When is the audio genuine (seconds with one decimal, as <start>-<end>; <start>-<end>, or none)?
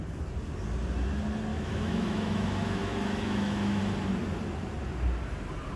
0.0-1.5; 3.8-5.8